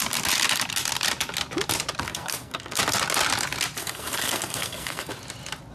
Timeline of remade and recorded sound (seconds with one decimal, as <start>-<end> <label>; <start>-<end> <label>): 0.0-2.1 recorded; 2.1-2.8 remade; 2.8-3.8 recorded; 3.8-5.1 remade; 5.1-5.7 recorded